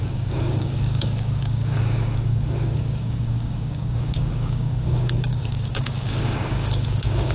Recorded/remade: remade